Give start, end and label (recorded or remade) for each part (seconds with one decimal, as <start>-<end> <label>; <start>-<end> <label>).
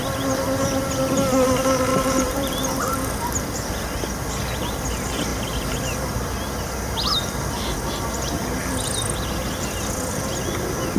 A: 0.0-1.9 recorded; 1.9-2.7 remade; 2.7-11.0 recorded